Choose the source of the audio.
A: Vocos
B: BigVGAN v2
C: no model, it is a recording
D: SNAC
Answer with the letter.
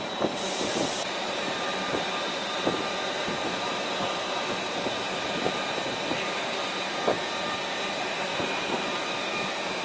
B